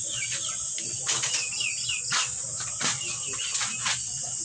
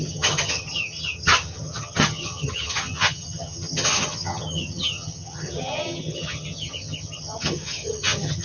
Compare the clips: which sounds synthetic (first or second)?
second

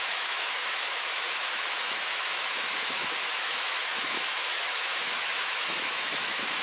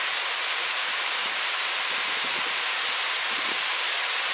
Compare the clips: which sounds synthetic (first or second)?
first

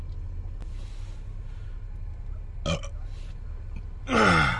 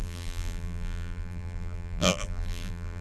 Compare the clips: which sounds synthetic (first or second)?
second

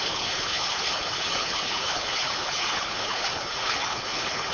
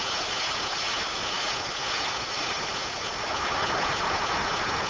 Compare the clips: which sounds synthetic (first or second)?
first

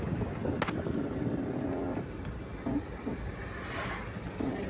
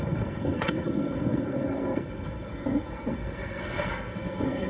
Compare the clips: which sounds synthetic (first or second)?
second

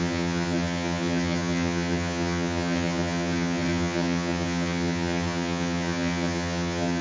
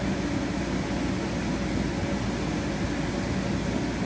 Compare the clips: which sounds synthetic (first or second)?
first